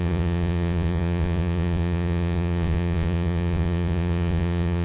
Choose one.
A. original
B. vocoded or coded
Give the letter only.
B